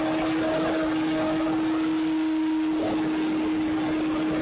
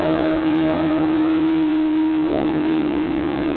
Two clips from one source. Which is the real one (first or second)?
first